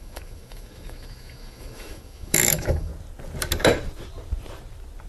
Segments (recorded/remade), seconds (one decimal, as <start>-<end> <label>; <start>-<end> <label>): 0.0-2.9 remade; 2.9-5.1 recorded